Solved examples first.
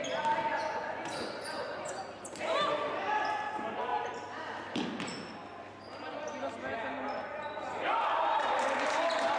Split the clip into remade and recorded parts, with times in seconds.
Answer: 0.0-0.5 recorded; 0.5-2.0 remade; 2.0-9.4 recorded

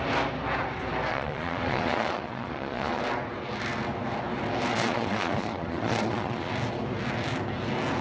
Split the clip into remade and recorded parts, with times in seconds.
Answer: 0.0-1.1 recorded; 1.1-3.0 remade; 3.0-4.7 recorded; 4.7-6.5 remade; 6.5-8.0 recorded

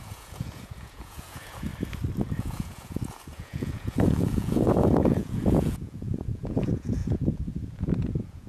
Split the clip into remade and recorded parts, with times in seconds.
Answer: 0.0-1.7 remade; 1.7-2.4 recorded; 2.4-8.5 remade

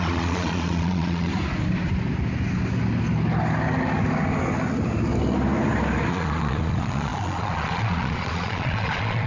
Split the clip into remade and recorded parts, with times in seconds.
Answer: 0.0-1.3 remade; 1.3-6.1 recorded; 6.1-9.3 remade